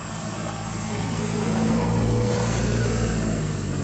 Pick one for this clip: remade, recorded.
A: remade